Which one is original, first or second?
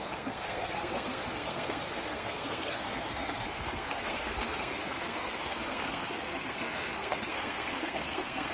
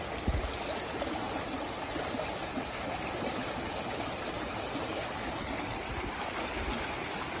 second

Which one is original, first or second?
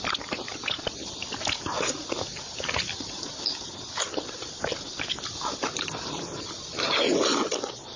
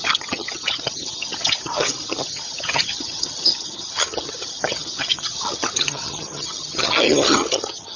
first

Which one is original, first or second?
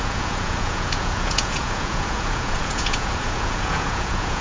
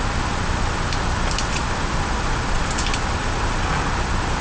second